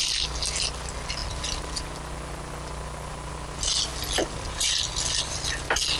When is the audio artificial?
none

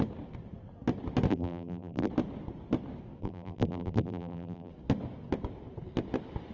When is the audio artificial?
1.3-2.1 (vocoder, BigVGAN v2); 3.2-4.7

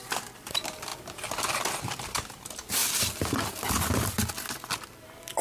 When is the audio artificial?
0.0-0.9 (vocoder, BigVGAN v2); 1.8-2.8; 4.7-5.4

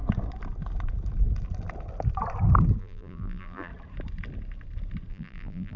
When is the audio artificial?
2.8-3.7 (vocoder, BigVGAN v2); 5.1-5.8